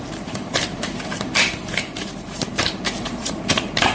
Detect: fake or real fake